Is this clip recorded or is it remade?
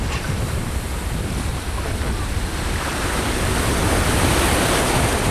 remade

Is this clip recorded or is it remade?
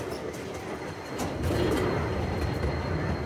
recorded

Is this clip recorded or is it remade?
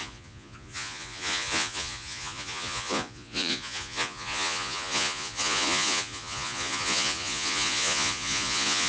remade